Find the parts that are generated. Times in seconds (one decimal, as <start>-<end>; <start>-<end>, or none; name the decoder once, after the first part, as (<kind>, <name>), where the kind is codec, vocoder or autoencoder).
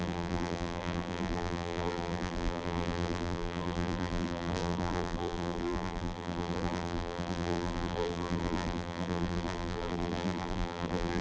0.0-11.2 (vocoder, BigVGAN v2)